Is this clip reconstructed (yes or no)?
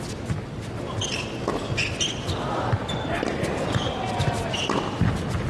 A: no